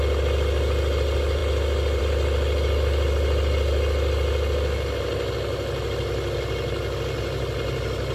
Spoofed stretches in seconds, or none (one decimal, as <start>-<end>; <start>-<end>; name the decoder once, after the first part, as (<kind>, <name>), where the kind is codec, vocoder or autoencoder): none